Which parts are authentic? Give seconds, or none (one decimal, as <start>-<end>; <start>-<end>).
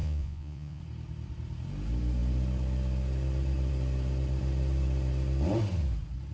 0.8-6.3